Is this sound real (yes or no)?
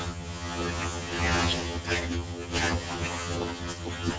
no